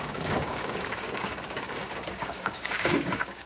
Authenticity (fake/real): fake